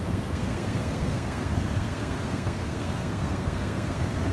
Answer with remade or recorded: remade